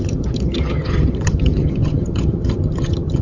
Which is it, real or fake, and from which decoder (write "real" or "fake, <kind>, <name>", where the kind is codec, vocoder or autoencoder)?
fake, vocoder, HiFi-GAN